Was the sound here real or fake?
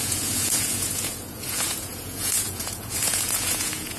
fake